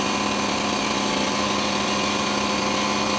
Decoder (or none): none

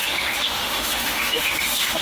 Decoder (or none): autoencoder, DAC-VAE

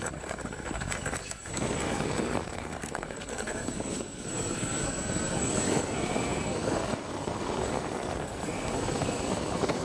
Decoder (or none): codec, SNAC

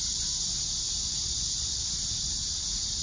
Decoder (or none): none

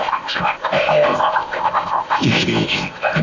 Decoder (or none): codec, ZipCodec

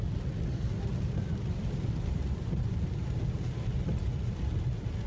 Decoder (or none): none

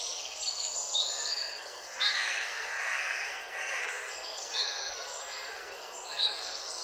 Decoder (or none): codec, SNAC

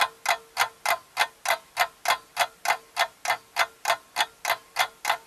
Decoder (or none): none